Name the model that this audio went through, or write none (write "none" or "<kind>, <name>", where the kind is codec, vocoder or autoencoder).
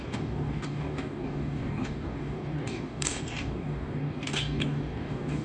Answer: codec, DAC